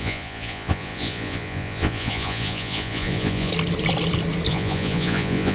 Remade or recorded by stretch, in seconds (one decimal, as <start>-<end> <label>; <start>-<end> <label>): 0.0-3.5 remade; 3.5-4.5 recorded; 4.5-5.5 remade